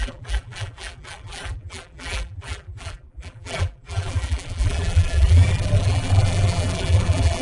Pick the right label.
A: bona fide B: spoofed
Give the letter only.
B